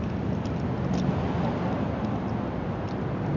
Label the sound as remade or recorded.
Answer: recorded